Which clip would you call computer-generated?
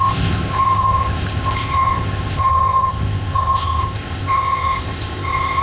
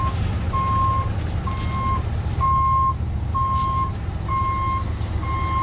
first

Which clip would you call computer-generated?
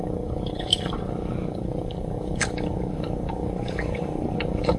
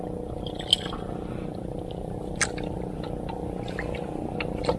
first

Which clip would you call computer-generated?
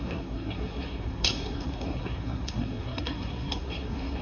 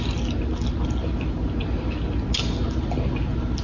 first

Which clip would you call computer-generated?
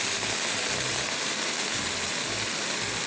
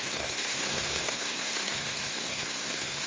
second